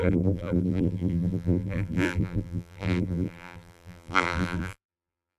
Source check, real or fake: fake